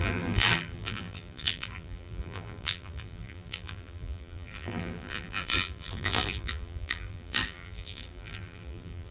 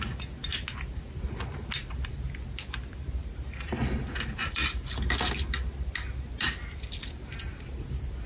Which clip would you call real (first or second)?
second